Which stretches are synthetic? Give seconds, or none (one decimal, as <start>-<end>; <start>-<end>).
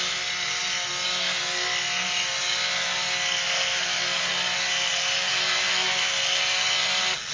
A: none